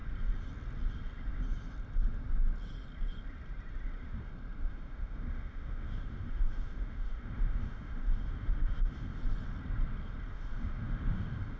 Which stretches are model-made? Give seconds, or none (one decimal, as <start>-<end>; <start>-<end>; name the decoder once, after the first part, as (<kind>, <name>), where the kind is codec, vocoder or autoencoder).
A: 4.7-9.2 (autoencoder, DAC-VAE); 10.3-11.6